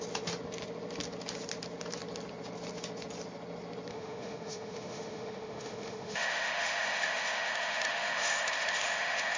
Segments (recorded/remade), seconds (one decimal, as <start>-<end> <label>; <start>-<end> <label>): 0.0-3.9 recorded; 3.9-9.4 remade